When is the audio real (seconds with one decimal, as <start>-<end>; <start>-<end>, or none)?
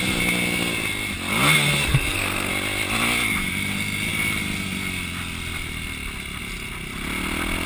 0.0-1.9; 2.5-7.7